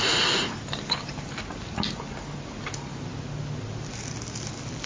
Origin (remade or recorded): recorded